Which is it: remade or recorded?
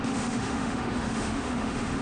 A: remade